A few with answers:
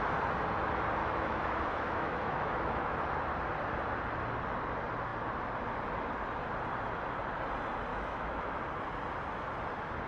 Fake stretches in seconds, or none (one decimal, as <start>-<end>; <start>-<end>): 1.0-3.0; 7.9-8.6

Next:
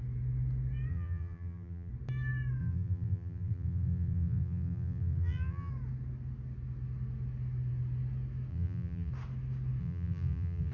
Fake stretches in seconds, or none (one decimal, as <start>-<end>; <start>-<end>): 0.9-1.9; 2.6-5.7; 8.5-9.1; 9.8-10.7

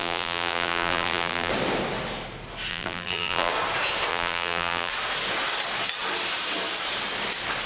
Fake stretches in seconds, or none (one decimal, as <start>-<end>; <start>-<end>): 0.0-1.5; 2.7-3.5; 4.1-4.9

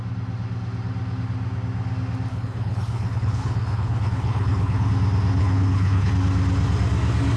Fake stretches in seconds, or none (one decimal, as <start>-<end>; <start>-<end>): 2.3-4.9; 5.4-6.1

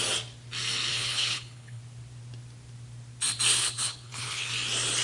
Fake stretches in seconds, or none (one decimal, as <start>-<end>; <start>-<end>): 0.9-1.8; 3.6-4.5

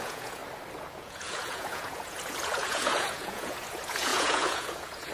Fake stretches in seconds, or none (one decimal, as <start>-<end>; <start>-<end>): 0.0-0.4; 0.9-5.1

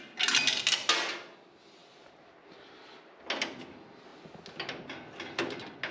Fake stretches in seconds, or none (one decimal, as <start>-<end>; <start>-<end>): none

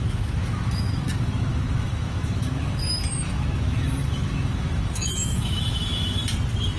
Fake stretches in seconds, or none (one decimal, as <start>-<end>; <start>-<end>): 0.0-6.2